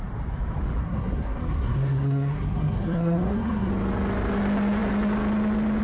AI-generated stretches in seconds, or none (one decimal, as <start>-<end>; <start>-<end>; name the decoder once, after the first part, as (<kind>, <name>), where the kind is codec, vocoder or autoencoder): 0.8-3.7 (codec, SNAC)